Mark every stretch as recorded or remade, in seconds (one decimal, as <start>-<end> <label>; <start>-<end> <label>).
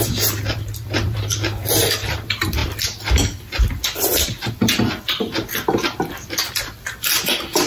0.0-7.7 remade